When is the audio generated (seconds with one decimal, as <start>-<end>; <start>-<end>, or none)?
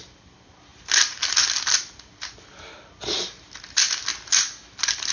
none